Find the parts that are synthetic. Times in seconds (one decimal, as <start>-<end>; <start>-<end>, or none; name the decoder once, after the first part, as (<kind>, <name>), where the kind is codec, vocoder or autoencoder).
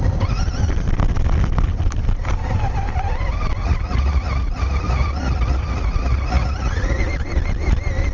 3.6-7.0 (vocoder, Vocos)